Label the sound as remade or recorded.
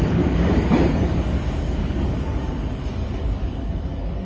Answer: remade